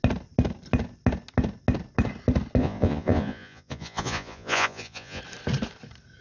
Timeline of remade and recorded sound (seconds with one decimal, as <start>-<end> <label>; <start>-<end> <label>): 0.0-2.6 recorded; 2.6-5.2 remade; 5.2-6.2 recorded